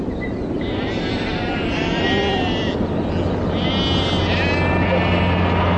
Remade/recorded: recorded